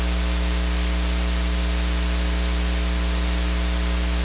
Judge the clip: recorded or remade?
recorded